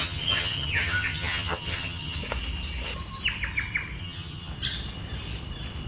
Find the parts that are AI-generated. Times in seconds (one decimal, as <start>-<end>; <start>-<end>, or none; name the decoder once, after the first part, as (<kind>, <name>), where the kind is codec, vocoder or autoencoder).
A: 0.0-2.2 (vocoder, HiFi-GAN); 4.0-4.5